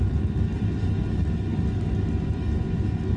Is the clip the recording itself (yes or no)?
yes